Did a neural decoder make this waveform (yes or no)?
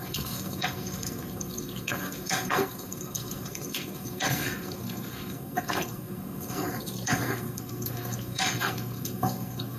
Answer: yes